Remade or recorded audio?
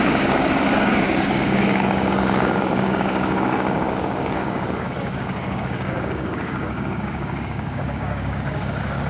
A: remade